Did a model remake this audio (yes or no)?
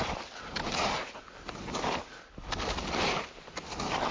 no